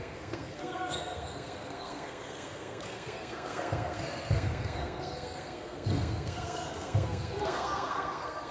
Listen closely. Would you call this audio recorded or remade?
remade